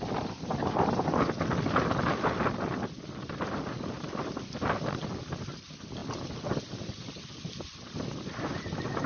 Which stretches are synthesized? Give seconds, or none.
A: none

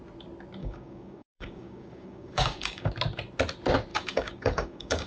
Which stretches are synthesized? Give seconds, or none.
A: 0.6-2.9 (codec, DAC); 3.9-5.1

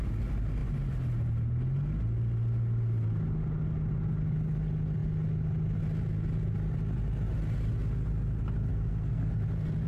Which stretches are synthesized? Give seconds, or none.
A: 8.7-9.3 (codec, SNAC)